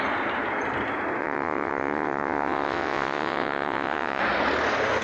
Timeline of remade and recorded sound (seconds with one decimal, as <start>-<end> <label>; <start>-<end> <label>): 0.0-1.2 recorded; 1.2-4.2 remade; 4.2-5.0 recorded

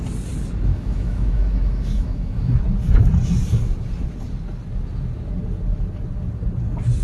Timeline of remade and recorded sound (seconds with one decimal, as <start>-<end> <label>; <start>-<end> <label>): 0.0-0.7 recorded; 0.7-2.6 remade; 2.6-7.0 recorded